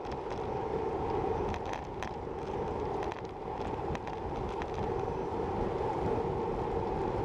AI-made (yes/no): no